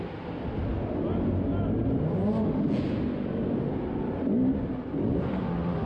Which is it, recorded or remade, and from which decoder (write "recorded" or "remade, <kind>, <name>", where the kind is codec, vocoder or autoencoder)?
recorded